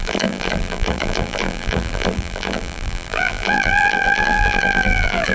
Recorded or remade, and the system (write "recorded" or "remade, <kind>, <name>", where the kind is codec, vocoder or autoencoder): remade, vocoder, BigVGAN v2